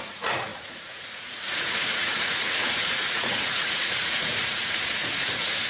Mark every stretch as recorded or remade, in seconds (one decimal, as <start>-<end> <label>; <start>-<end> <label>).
0.0-5.7 remade